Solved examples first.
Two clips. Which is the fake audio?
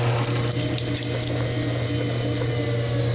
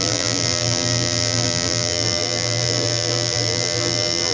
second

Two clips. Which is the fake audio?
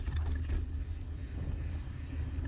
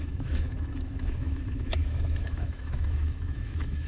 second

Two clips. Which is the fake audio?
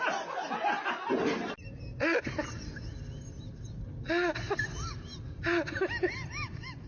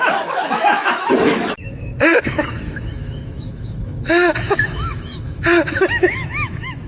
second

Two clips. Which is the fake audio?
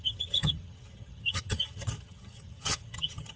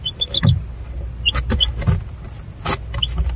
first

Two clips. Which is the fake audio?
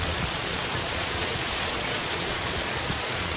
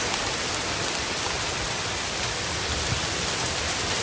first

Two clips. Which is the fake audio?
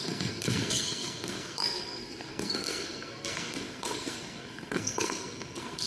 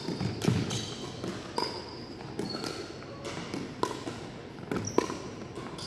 first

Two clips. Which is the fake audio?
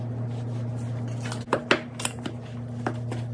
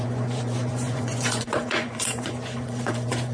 second